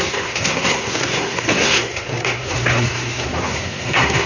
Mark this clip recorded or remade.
remade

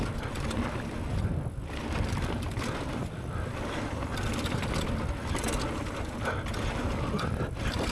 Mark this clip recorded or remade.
recorded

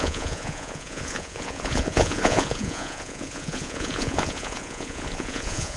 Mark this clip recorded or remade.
remade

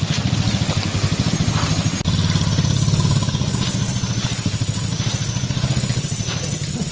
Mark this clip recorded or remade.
recorded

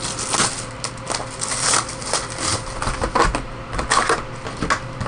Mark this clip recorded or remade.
recorded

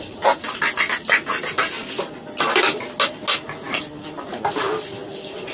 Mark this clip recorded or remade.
recorded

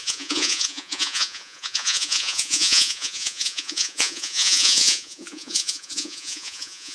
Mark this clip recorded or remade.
remade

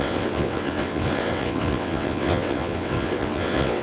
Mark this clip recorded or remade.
remade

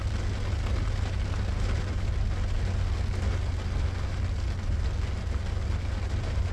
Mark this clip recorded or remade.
recorded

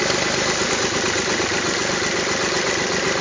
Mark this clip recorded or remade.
recorded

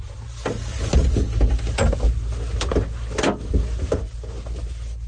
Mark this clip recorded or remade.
recorded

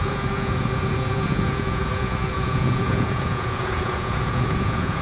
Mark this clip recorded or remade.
remade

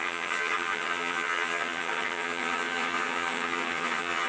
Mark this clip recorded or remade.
remade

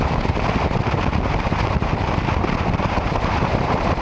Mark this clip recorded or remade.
remade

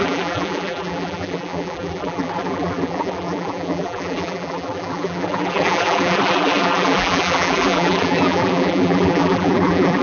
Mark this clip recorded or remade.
remade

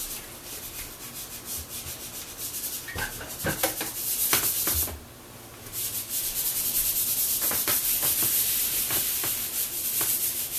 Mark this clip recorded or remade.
recorded